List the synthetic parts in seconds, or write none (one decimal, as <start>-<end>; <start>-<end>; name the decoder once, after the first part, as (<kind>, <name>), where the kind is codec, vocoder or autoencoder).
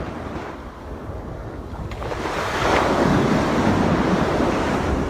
0.6-3.7 (codec, DAC)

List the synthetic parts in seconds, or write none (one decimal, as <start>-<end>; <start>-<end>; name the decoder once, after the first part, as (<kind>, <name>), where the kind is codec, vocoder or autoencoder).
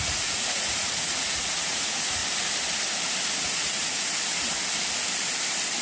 0.0-2.2 (vocoder, Vocos); 3.3-3.8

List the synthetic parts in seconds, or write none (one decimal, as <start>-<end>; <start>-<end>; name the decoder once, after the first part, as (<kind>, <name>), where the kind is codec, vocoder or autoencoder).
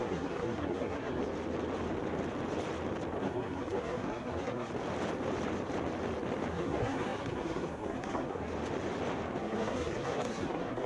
0.0-1.2 (codec, SNAC); 3.2-4.7; 6.5-8.5; 9.4-10.9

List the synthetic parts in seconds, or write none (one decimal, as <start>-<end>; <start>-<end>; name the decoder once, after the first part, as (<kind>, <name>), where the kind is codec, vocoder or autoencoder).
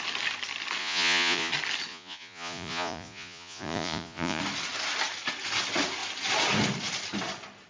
0.8-1.5 (vocoder, Vocos); 1.9-4.4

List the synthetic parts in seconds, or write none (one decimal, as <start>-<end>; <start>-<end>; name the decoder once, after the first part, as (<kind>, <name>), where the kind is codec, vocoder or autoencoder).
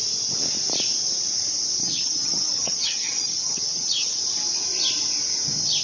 1.8-4.2 (vocoder, HiFi-GAN)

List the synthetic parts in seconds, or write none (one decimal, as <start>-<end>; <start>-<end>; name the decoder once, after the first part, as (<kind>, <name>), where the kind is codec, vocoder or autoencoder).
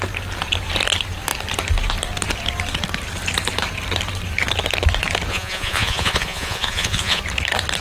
5.3-7.2 (vocoder, Vocos)